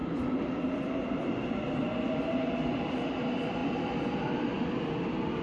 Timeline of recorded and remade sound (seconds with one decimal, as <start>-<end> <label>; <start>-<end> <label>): 0.0-5.4 recorded